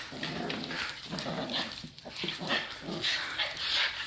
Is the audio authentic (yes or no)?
yes